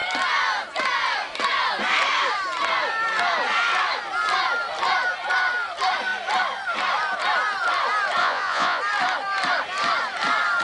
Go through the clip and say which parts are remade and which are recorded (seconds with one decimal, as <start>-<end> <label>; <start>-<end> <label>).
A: 0.0-8.2 recorded; 8.2-8.8 remade; 8.8-10.6 recorded